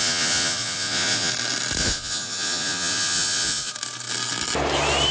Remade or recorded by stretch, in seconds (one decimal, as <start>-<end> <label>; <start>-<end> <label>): 0.0-1.3 remade; 1.3-1.8 recorded; 1.8-3.7 remade; 3.7-5.1 recorded

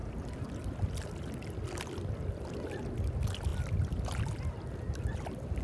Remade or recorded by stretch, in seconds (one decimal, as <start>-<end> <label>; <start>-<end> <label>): 0.0-5.6 recorded

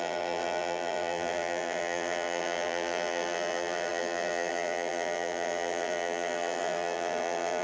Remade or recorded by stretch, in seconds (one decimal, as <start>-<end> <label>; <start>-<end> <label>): 0.0-7.6 remade